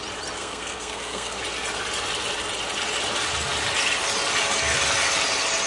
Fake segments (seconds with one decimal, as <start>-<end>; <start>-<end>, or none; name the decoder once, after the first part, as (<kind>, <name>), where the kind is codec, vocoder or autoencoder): 0.4-1.4 (codec, SNAC)